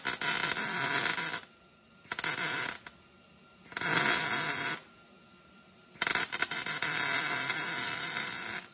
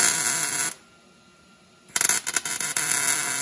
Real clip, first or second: second